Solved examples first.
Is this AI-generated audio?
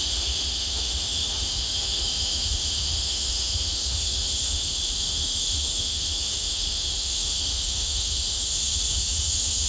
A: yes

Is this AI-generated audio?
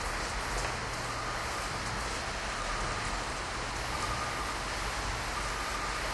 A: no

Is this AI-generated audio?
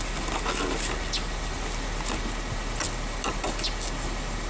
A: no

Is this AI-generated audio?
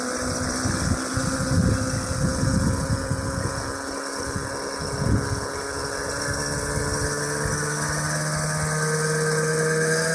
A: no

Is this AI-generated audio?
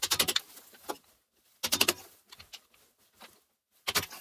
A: no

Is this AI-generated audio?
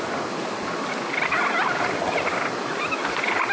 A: no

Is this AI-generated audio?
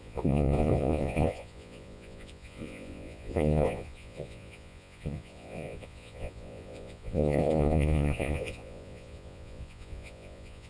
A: yes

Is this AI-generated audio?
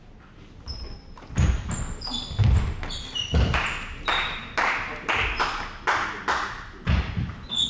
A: no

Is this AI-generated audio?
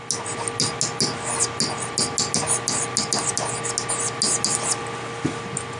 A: no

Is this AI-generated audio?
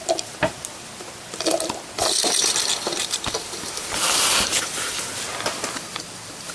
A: yes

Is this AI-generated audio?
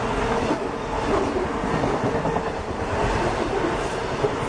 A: no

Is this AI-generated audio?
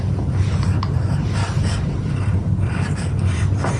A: no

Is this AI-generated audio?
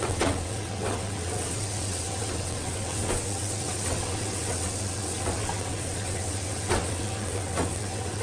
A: yes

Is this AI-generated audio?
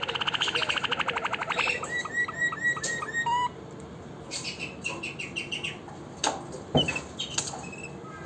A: no